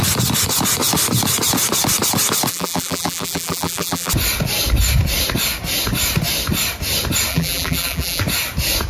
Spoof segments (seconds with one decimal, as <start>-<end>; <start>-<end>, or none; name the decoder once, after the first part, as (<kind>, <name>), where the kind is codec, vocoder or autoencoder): 2.5-4.1 (vocoder, BigVGAN v2); 7.3-8.2